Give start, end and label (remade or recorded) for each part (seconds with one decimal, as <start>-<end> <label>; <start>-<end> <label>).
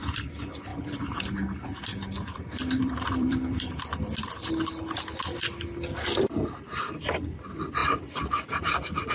0.0-0.7 recorded; 0.7-1.2 remade; 1.2-1.9 recorded; 1.9-4.5 remade; 4.5-9.1 recorded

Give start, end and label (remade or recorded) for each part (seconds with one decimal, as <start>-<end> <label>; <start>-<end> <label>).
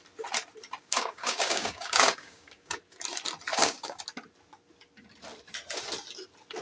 0.0-0.8 recorded; 0.8-2.8 remade; 2.8-3.5 recorded; 3.5-4.0 remade; 4.0-6.6 recorded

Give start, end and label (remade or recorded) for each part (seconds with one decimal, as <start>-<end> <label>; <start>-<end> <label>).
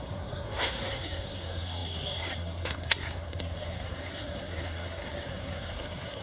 0.0-6.2 remade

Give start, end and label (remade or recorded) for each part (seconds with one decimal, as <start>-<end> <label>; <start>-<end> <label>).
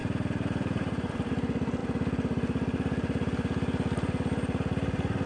0.0-1.1 remade; 1.1-5.3 recorded